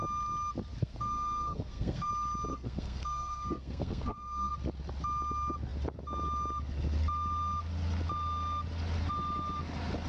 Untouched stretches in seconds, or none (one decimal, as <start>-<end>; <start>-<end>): 0.0-0.8; 2.1-2.5; 4.5-10.1